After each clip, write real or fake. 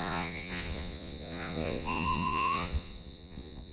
fake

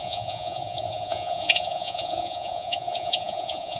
fake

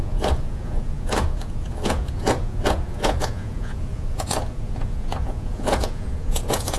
fake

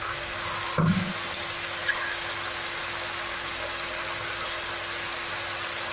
real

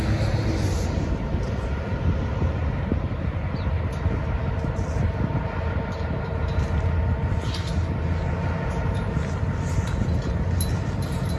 real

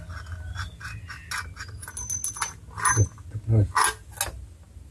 real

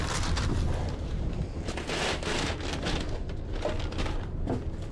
real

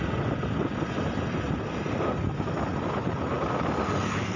real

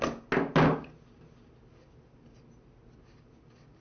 real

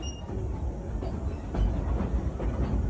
real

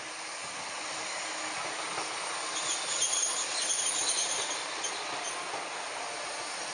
real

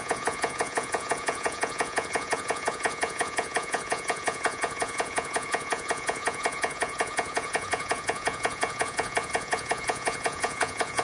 fake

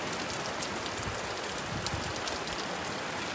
real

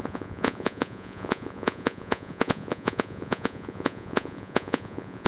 fake